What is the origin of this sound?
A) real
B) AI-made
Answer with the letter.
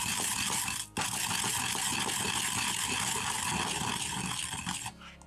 A